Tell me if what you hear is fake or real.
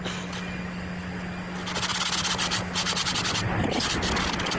real